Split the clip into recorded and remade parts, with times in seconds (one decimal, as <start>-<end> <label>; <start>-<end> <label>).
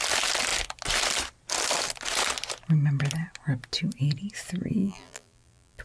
0.0-4.8 recorded; 4.8-5.8 remade